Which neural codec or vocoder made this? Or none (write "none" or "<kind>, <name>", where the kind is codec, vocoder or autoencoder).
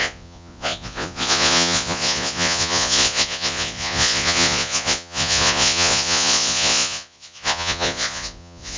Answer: vocoder, Vocos